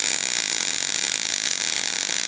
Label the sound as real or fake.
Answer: real